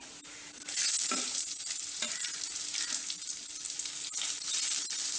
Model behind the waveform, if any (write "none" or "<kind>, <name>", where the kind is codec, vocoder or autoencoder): none